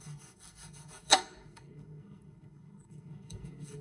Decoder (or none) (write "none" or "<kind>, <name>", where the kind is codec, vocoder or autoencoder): codec, SNAC